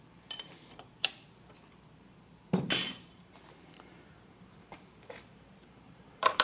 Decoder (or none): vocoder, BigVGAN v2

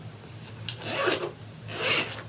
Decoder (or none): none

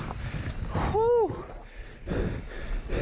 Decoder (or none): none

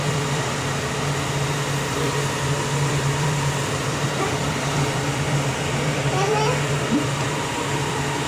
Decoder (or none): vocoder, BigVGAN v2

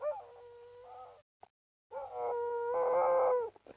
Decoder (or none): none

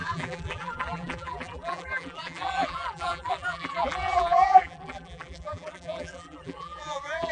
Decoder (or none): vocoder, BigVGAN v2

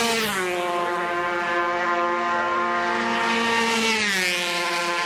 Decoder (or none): none